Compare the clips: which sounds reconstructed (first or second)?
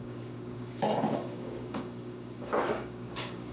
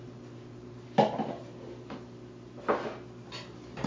first